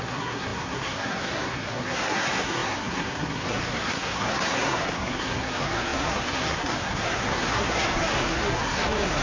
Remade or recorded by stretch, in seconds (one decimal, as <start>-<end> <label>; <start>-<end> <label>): 0.0-9.2 remade